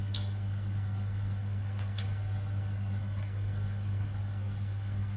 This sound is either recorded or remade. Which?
remade